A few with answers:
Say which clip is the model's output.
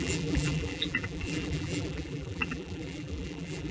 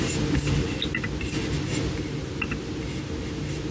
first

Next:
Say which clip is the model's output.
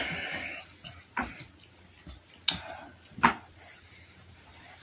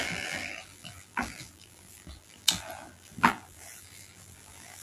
second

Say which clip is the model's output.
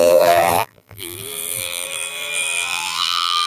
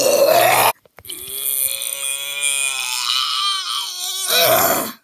first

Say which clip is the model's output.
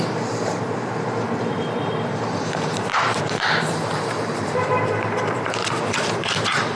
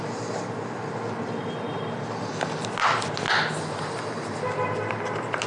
first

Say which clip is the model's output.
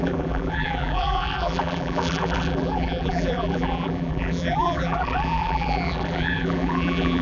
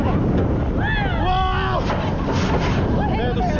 first